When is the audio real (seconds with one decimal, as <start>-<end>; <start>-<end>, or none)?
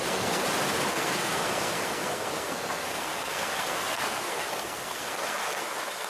0.4-0.9